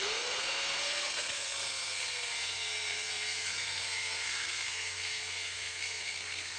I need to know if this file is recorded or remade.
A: remade